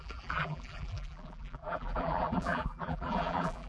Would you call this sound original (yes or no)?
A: no